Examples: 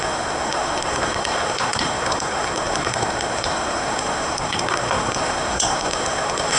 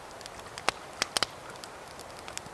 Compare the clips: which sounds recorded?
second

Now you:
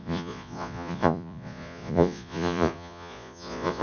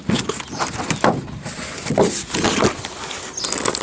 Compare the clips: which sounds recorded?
second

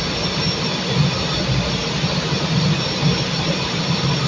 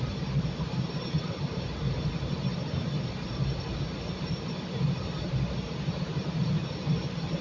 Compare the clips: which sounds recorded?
first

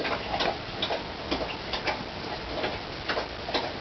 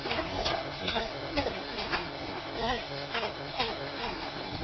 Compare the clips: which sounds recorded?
first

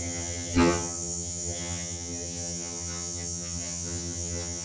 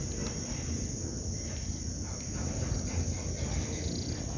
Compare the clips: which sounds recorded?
second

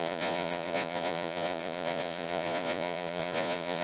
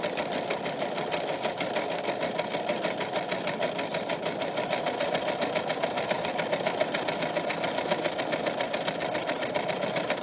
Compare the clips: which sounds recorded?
second